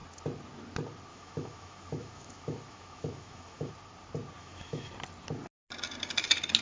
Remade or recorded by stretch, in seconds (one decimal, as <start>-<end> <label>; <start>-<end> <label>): 0.0-1.1 recorded; 1.1-3.7 remade; 3.7-4.4 recorded; 4.4-4.9 remade; 4.9-6.6 recorded